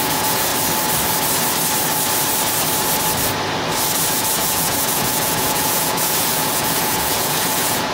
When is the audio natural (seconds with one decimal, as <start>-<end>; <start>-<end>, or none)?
0.5-4.1